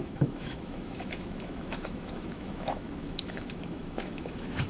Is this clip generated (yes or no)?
yes